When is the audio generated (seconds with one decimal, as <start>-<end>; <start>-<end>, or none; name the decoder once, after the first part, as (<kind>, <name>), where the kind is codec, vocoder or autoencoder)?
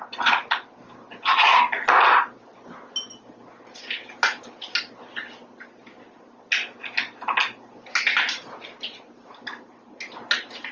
none